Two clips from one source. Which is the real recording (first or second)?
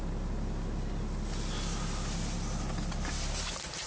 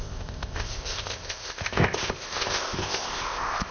first